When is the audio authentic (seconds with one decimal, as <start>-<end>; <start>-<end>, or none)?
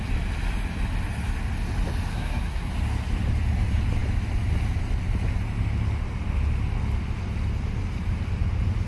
0.0-2.1; 2.7-8.9